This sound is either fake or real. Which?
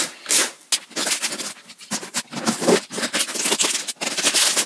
real